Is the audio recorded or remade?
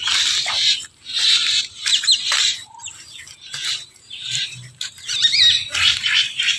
remade